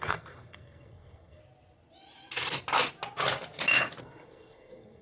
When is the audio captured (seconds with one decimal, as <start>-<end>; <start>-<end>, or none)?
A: 1.4-4.0